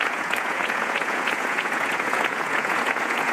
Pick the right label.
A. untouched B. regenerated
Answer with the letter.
B